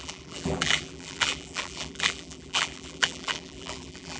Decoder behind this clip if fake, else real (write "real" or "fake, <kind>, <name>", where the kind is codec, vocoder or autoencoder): fake, vocoder, BigVGAN v2